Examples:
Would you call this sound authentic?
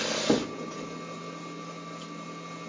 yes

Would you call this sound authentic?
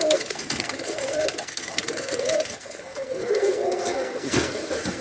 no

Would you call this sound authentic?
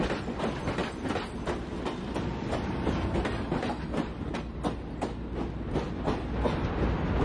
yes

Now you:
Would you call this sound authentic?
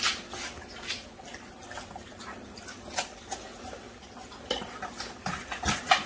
yes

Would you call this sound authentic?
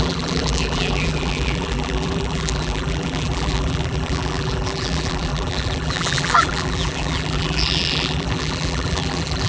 no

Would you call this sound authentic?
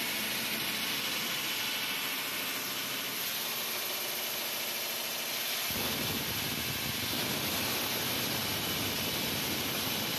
yes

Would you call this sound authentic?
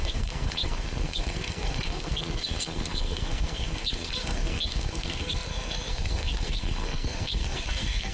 no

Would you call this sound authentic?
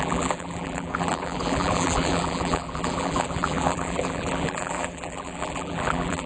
no